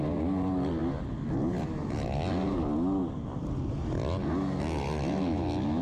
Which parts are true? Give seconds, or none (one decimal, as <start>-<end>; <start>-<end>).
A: 0.0-5.8